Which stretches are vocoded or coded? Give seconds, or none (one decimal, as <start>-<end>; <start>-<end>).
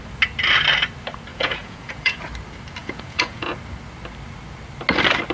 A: 1.3-2.2; 2.8-3.5